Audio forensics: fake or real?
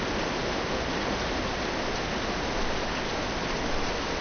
real